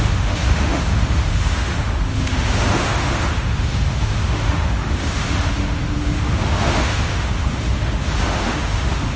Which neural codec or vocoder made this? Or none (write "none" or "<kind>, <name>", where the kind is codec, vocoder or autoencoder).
autoencoder, DAC-VAE